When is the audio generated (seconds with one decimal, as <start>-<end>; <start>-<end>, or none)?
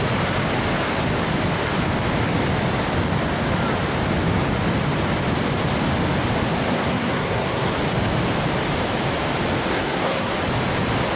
6.7-7.7; 9.7-10.3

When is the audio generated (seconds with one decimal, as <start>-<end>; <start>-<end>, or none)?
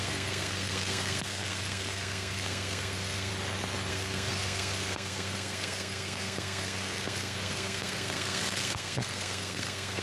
0.0-3.3; 3.9-10.0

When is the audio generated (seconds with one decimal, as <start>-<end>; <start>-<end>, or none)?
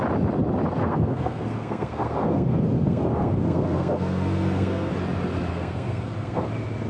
0.8-4.9; 5.5-6.5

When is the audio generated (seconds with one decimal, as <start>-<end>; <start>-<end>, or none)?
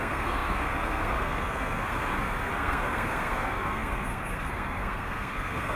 0.0-5.8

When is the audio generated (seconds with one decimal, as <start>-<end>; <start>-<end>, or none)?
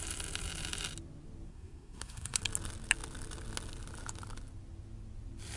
1.5-2.4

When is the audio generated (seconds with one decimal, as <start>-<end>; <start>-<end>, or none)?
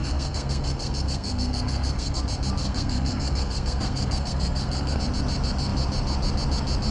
0.0-2.2; 2.6-5.0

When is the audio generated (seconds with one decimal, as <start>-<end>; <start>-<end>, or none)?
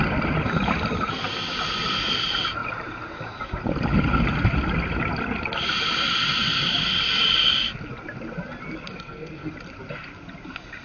8.9-9.5